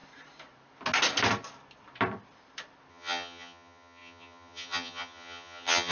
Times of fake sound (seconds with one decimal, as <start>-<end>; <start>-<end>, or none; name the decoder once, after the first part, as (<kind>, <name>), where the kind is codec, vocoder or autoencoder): 2.9-5.9 (vocoder, HiFi-GAN)

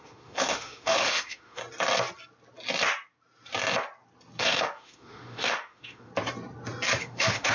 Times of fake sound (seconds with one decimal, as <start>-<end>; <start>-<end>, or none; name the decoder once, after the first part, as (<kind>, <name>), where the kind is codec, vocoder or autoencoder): 0.0-1.6 (autoencoder, DAC-VAE); 4.4-6.1; 7.0-7.5

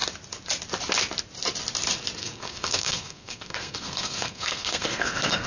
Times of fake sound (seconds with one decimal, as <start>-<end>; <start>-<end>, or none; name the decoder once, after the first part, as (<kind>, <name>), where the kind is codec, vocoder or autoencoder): 2.2-5.5 (codec, SNAC)

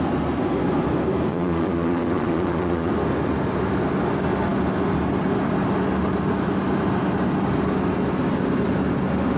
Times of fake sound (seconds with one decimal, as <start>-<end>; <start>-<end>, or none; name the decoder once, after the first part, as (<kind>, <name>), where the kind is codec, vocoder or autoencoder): 1.3-2.9 (vocoder, Vocos)

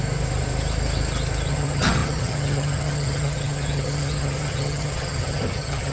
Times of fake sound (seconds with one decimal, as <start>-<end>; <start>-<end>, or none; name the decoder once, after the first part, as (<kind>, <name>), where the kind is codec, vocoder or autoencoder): 1.5-5.9 (vocoder, HiFi-GAN)